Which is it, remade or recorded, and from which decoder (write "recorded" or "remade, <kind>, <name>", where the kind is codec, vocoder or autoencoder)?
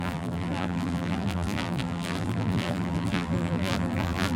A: remade, vocoder, BigVGAN v2